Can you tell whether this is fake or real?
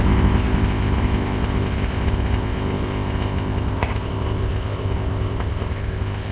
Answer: fake